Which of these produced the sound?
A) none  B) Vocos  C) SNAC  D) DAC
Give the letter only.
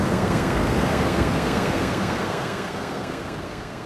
C